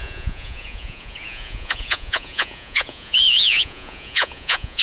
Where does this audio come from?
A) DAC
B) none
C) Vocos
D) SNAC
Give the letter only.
C